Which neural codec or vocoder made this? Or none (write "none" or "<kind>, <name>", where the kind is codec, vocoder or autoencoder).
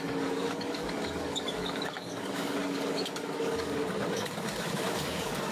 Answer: codec, DAC